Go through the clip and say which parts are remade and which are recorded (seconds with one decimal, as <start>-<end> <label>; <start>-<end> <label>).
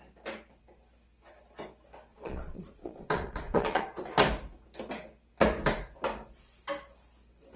0.0-2.1 recorded; 2.1-3.8 remade; 3.8-7.6 recorded